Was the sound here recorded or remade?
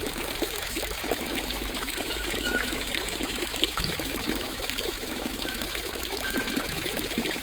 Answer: remade